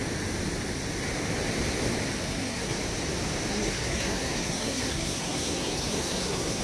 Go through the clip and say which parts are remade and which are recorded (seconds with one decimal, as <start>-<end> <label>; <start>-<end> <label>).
0.0-2.2 recorded; 2.2-2.8 remade; 2.8-3.5 recorded; 3.5-6.6 remade

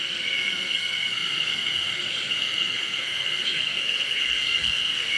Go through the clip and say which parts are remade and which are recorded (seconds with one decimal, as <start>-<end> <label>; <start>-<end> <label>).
0.0-5.2 remade

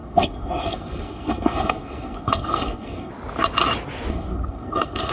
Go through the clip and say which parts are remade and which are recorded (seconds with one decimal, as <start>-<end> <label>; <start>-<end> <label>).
0.0-3.1 remade; 3.1-4.1 recorded; 4.1-5.1 remade

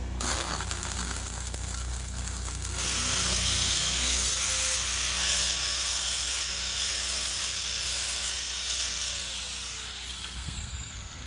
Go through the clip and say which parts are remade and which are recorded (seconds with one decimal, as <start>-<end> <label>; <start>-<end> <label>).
0.0-9.3 remade; 9.3-10.1 recorded; 10.1-11.3 remade